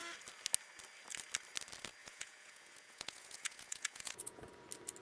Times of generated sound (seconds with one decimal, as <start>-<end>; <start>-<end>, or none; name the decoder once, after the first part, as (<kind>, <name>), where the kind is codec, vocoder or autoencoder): 2.0-4.4 (vocoder, Vocos)